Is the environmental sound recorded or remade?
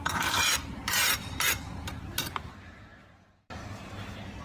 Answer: remade